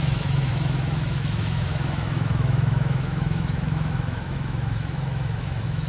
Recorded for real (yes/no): no